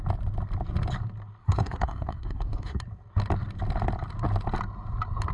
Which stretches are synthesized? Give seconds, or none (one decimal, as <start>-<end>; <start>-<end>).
1.4-2.8